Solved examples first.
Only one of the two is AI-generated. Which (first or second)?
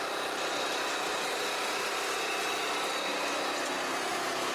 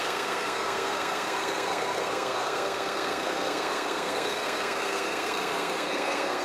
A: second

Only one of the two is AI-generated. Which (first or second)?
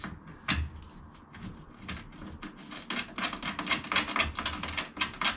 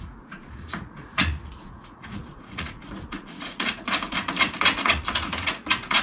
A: second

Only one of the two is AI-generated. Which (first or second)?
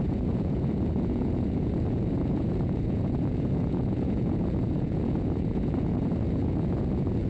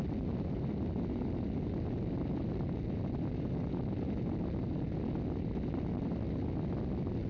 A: first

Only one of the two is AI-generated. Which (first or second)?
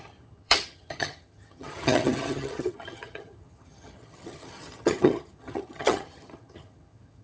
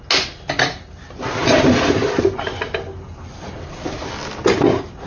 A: first